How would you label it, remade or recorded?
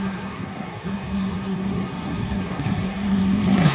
remade